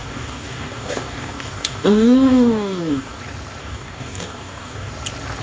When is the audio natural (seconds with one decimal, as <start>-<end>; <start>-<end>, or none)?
3.2-3.6; 4.9-5.4